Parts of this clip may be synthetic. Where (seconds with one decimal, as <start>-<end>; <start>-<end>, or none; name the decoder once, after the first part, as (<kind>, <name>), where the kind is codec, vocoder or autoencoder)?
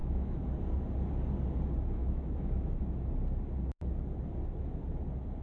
0.0-0.6 (autoencoder, DAC-VAE); 2.0-2.8